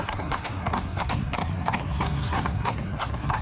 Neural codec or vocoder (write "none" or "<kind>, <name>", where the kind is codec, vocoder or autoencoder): codec, SNAC